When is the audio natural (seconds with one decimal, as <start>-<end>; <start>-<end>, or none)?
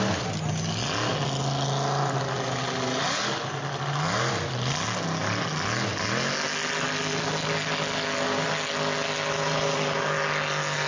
0.0-10.9